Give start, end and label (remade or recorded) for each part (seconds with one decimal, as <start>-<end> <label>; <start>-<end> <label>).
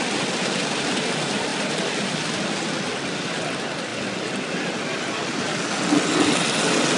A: 0.0-7.0 recorded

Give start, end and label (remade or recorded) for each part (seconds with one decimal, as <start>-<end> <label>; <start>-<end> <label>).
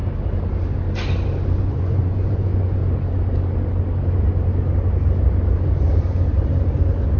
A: 0.0-1.6 recorded; 1.6-2.8 remade; 2.8-7.2 recorded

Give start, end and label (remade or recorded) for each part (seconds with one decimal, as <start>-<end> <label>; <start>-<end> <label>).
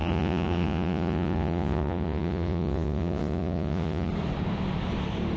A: 0.0-4.1 remade; 4.1-5.4 recorded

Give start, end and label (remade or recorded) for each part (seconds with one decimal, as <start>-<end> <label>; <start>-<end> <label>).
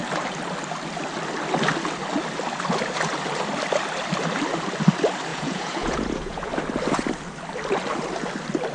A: 0.0-5.3 recorded; 5.3-6.5 remade; 6.5-8.7 recorded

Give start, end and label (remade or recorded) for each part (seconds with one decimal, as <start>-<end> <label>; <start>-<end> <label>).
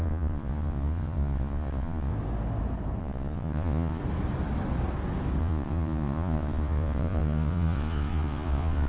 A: 0.0-2.1 remade; 2.1-3.0 recorded; 3.0-4.0 remade; 4.0-5.4 recorded; 5.4-8.9 remade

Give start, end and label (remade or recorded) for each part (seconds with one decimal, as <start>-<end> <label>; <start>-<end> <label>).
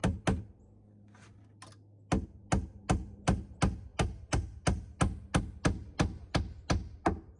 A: 0.0-7.4 recorded